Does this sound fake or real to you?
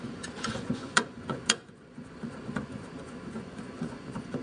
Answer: fake